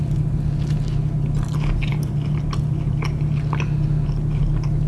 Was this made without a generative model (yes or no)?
yes